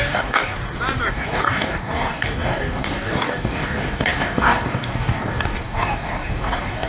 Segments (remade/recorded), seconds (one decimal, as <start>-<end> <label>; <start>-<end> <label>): 0.0-0.5 remade; 0.5-1.1 recorded; 1.1-6.9 remade